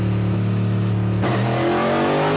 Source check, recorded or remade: recorded